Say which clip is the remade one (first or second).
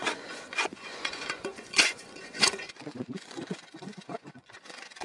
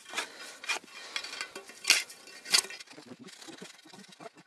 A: first